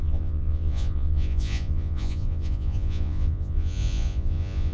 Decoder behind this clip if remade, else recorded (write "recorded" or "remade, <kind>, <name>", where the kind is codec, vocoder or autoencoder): remade, vocoder, Vocos